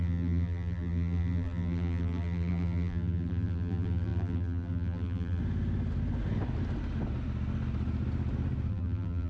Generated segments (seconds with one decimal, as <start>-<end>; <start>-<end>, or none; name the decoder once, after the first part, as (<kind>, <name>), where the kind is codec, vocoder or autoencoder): 0.0-5.4 (vocoder, BigVGAN v2); 8.7-9.3